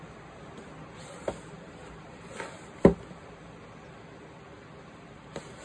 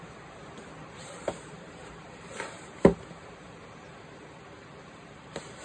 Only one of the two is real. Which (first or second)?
first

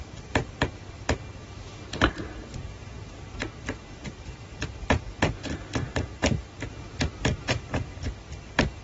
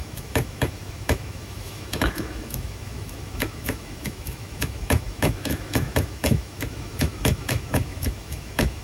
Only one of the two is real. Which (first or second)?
first